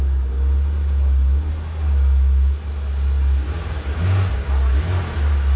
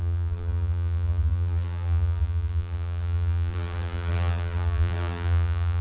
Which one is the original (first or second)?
first